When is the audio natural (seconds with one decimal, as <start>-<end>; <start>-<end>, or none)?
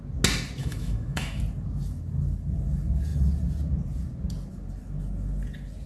0.0-0.6; 1.4-5.9